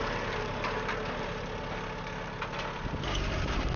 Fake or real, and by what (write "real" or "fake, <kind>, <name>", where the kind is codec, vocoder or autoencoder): real